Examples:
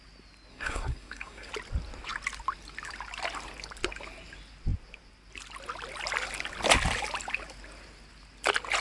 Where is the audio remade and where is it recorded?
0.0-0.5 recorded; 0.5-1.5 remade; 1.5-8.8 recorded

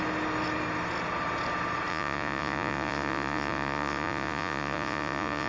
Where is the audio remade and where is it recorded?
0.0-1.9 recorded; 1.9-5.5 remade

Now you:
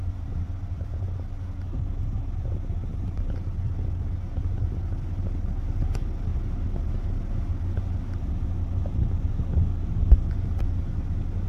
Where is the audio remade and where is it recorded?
0.0-11.5 recorded

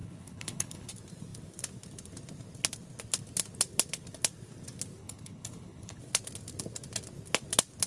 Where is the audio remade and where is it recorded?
0.0-0.9 remade; 0.9-5.0 recorded; 5.0-6.0 remade; 6.0-7.9 recorded

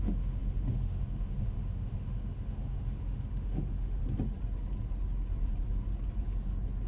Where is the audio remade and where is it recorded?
0.0-4.0 remade; 4.0-6.9 recorded

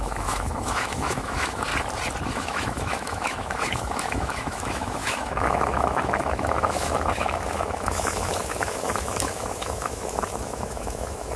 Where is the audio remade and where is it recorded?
0.0-1.7 remade; 1.7-2.3 recorded; 2.3-11.4 remade

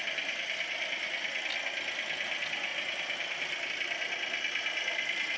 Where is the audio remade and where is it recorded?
0.0-5.4 recorded